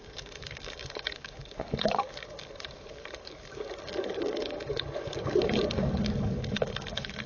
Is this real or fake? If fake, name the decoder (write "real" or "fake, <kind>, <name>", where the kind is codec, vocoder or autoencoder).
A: fake, codec, DAC